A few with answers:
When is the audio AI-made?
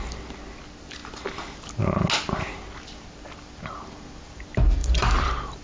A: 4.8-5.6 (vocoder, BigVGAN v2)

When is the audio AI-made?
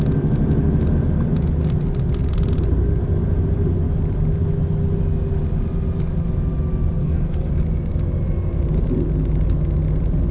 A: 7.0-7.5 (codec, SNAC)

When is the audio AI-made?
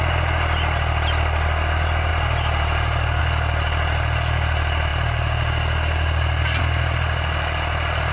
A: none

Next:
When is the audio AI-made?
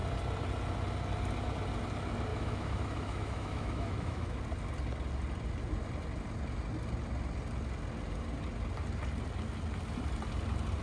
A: 2.3-4.4 (autoencoder, DAC-VAE)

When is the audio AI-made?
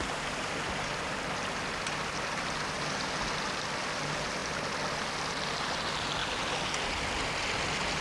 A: none